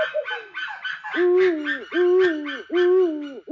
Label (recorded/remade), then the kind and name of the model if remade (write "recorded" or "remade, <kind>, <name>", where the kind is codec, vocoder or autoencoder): recorded